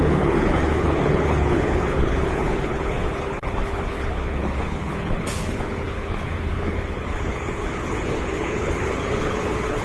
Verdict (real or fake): fake